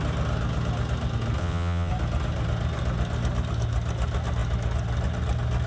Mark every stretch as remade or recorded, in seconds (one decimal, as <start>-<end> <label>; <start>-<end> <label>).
0.0-1.4 recorded; 1.4-1.9 remade; 1.9-5.7 recorded